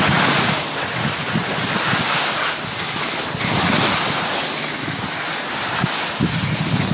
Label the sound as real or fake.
real